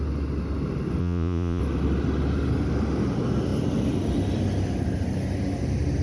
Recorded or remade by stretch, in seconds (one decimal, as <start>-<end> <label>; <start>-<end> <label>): 0.0-1.0 recorded; 1.0-1.6 remade; 1.6-6.0 recorded